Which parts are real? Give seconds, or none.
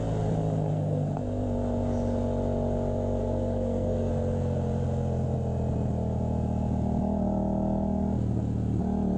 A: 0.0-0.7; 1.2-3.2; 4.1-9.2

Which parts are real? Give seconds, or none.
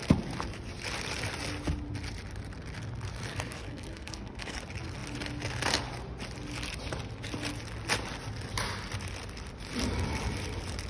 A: 0.0-3.3; 4.6-10.9